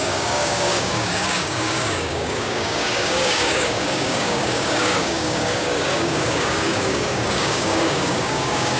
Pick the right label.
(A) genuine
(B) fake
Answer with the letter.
B